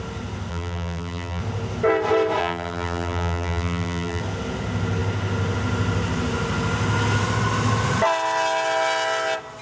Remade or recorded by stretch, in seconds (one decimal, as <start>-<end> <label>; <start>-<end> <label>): 0.0-0.5 recorded; 0.5-1.4 remade; 1.4-2.4 recorded; 2.4-4.2 remade; 4.2-9.6 recorded